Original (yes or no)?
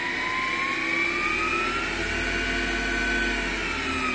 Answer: yes